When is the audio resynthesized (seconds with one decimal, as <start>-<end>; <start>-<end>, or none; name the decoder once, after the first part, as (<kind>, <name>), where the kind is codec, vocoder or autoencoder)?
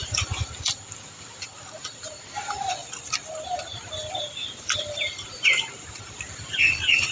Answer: 0.0-2.8 (vocoder, BigVGAN v2); 4.2-7.1